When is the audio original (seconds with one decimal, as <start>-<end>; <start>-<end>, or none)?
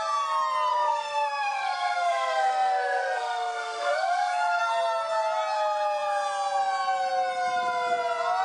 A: 0.0-0.7; 4.6-8.4